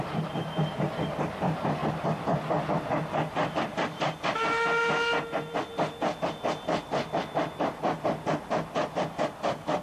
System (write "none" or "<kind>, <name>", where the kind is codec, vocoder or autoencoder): none